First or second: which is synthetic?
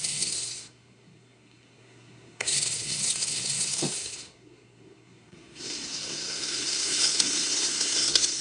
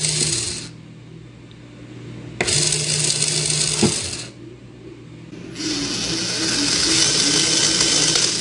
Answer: first